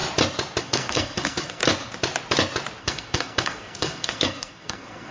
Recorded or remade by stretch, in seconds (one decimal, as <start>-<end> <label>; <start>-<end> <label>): 0.0-0.6 recorded; 0.6-1.6 remade; 1.6-2.8 recorded; 2.8-5.1 remade